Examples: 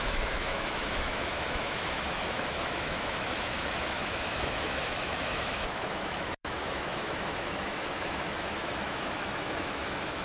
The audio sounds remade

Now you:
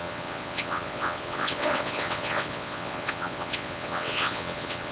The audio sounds remade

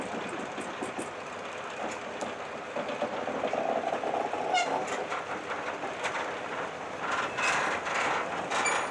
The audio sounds remade